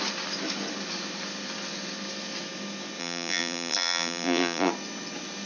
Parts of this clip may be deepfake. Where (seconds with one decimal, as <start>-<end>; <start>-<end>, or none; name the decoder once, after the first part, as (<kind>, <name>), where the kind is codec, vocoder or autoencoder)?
3.0-4.7 (vocoder, BigVGAN v2)